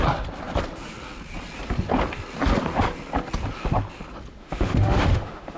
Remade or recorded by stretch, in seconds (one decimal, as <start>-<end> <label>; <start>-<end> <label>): 0.0-4.4 recorded; 4.4-5.6 remade